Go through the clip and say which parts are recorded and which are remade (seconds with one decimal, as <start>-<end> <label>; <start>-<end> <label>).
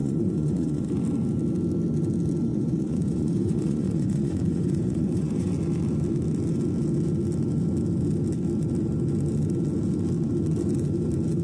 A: 0.0-0.9 remade; 0.9-2.5 recorded; 2.5-5.5 remade; 5.5-11.4 recorded